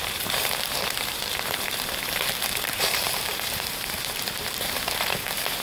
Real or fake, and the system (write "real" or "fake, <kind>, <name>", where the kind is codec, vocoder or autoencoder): fake, vocoder, BigVGAN v2